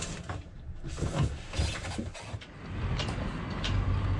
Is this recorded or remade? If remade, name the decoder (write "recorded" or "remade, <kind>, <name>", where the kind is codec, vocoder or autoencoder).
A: recorded